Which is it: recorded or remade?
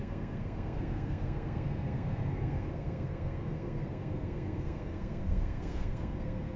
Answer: remade